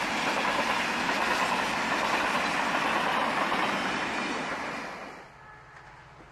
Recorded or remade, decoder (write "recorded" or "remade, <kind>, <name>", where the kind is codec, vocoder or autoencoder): recorded